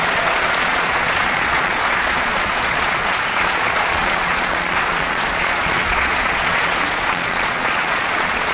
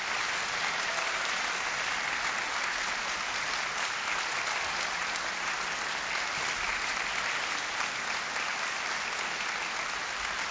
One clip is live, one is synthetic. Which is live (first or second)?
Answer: second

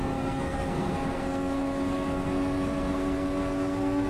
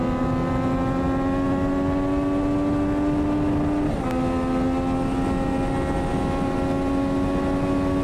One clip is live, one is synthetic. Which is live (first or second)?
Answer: second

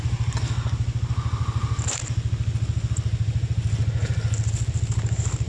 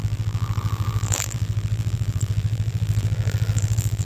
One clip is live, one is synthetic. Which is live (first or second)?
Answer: first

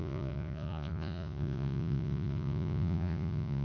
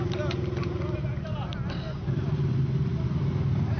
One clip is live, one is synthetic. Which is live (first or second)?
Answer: second